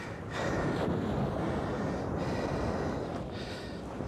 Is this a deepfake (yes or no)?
no